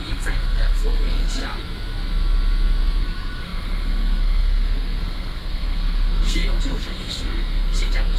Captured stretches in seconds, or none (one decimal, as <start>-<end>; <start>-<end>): 1.4-3.0